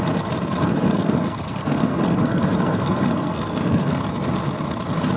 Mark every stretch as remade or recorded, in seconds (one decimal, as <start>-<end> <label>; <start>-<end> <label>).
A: 0.0-0.9 recorded; 0.9-4.0 remade; 4.0-5.2 recorded